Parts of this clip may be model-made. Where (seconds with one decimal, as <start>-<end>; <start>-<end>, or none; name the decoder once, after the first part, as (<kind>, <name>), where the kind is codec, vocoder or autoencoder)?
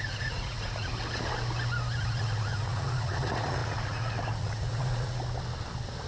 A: 0.0-0.9 (vocoder, Vocos); 2.0-5.2